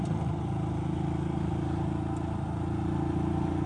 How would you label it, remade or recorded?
recorded